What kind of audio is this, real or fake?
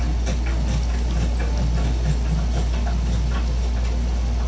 real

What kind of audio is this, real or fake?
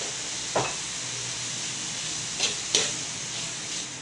real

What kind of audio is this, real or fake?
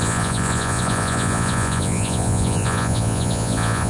fake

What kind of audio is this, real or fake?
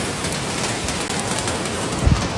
real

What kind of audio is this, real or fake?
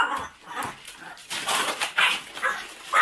real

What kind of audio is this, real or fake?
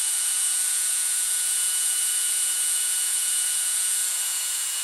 fake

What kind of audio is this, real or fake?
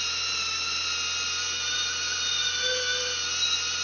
real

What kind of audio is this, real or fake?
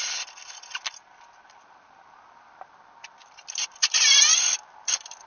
fake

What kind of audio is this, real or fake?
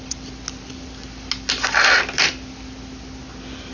real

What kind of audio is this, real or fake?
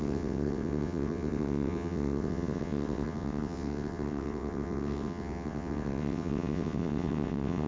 fake